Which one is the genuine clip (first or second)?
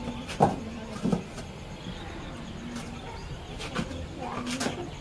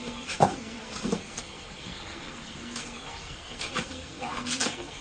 first